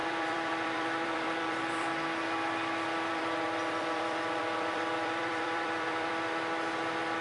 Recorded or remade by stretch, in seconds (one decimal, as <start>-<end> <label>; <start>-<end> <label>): 0.0-1.9 remade; 1.9-3.1 recorded; 3.1-6.1 remade; 6.1-7.2 recorded